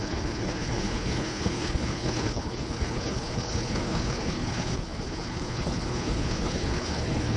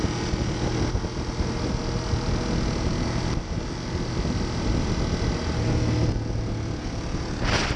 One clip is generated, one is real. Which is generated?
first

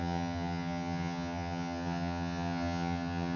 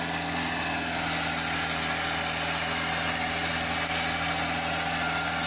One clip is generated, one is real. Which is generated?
first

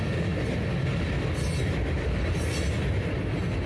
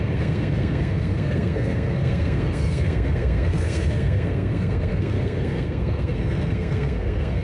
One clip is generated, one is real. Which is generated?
second